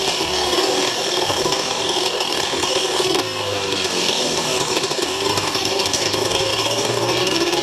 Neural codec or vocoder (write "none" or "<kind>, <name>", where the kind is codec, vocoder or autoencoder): codec, DAC